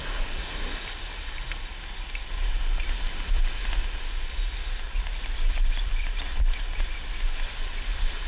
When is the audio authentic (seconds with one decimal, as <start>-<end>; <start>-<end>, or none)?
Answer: 0.0-8.3